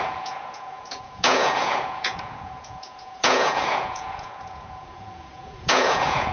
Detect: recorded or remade remade